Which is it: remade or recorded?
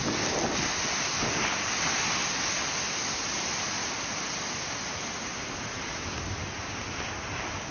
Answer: recorded